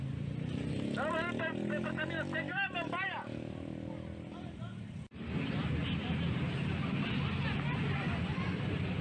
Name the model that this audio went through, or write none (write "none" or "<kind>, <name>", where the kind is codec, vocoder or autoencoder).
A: none